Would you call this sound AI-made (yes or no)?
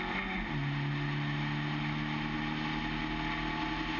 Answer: no